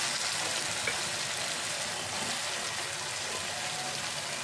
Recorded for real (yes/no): yes